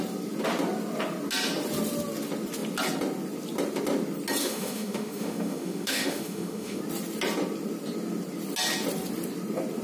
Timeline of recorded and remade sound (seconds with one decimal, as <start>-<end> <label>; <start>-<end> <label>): 0.0-4.4 recorded; 4.4-6.8 remade; 6.8-9.8 recorded